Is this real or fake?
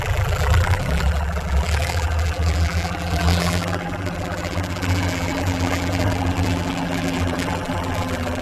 fake